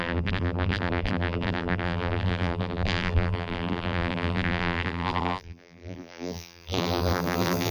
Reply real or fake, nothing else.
fake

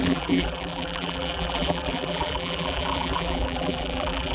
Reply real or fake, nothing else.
fake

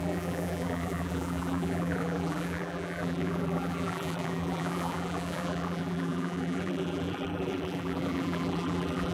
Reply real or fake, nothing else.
fake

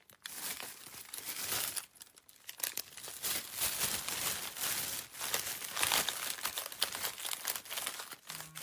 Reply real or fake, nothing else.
real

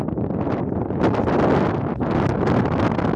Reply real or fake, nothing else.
real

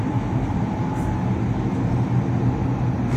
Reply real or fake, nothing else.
real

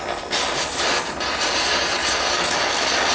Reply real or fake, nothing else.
real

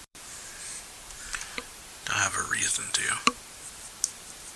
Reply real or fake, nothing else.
fake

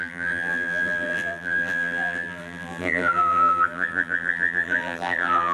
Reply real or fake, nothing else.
fake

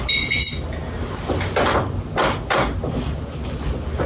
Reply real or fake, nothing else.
real